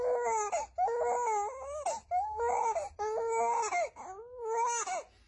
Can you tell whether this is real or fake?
real